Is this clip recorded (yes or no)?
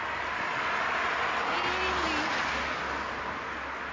yes